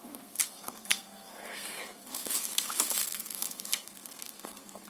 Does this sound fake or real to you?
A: fake